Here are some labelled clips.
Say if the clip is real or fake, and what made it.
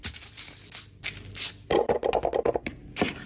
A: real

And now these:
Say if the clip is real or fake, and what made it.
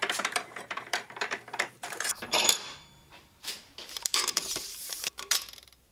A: fake, vocoder, BigVGAN v2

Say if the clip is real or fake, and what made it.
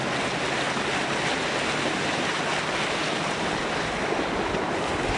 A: real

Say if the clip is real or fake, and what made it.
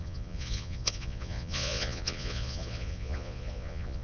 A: fake, vocoder, Vocos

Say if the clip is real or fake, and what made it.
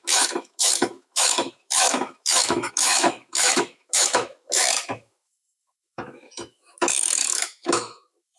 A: fake, autoencoder, DAC-VAE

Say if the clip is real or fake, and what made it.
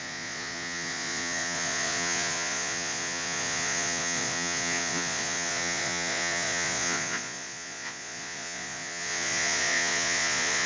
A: fake, vocoder, Vocos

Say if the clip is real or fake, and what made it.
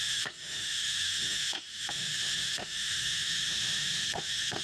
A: fake, autoencoder, DAC-VAE